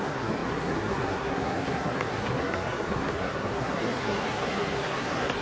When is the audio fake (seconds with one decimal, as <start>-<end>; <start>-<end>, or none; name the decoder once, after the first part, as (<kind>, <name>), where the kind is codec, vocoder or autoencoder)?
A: 0.0-5.4 (codec, SNAC)